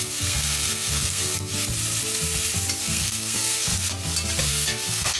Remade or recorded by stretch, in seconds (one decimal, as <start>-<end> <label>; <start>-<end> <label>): 0.0-1.5 remade; 1.5-2.8 recorded; 2.8-3.7 remade; 3.7-4.5 recorded; 4.5-5.2 remade